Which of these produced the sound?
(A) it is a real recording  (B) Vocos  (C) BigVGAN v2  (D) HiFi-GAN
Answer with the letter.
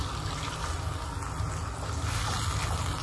A